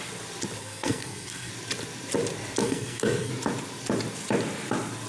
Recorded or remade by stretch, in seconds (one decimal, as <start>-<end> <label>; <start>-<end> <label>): 0.0-0.6 recorded; 0.6-1.5 remade; 1.5-2.6 recorded; 2.6-3.3 remade; 3.3-5.1 recorded